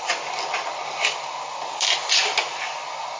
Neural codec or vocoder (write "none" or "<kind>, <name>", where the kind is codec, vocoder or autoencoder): none